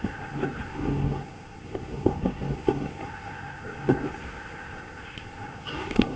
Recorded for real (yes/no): no